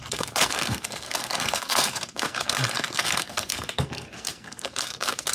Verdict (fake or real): fake